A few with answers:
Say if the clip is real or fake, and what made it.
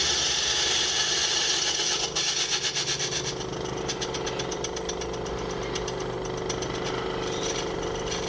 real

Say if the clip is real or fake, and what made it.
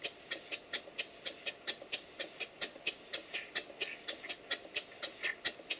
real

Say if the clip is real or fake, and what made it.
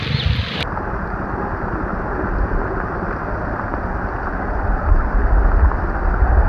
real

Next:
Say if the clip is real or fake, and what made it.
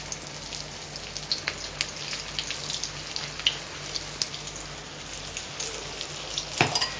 real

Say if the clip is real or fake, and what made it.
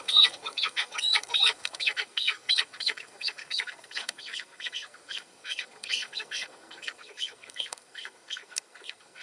fake, codec, SNAC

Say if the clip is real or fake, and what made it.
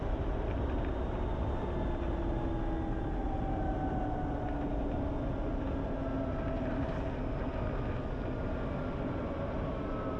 real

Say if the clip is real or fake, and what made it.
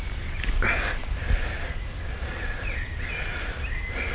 real